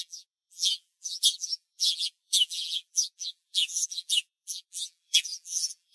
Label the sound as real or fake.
fake